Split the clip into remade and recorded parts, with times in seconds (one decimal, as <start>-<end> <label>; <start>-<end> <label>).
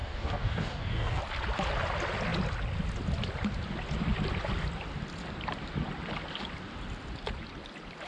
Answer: 0.0-1.2 remade; 1.2-8.1 recorded